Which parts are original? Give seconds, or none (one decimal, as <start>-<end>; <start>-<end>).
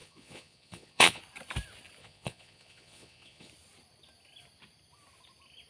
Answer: 1.2-2.0; 3.5-5.7